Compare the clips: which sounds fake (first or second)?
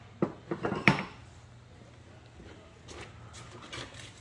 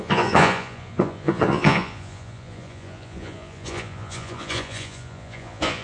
second